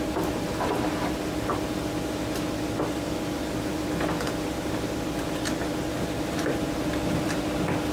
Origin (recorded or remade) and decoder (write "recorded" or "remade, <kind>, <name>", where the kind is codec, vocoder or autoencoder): recorded